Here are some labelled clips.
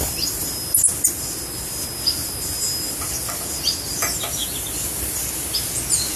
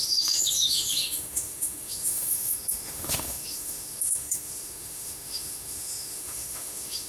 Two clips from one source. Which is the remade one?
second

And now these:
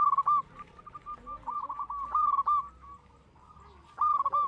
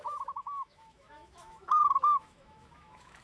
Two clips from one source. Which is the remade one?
second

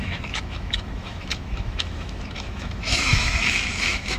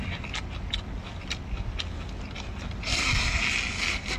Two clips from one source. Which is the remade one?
first